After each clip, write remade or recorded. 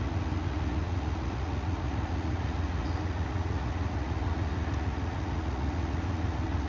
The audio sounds remade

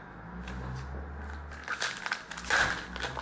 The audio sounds recorded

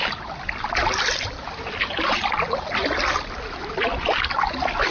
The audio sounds recorded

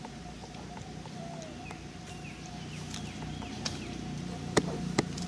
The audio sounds recorded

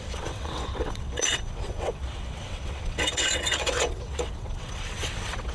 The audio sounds remade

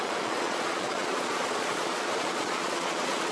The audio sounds remade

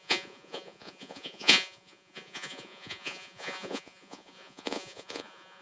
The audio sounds remade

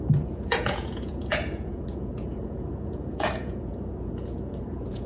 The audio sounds remade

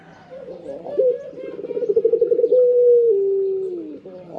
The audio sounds recorded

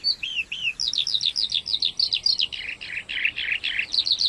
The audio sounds recorded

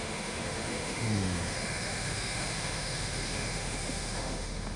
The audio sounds remade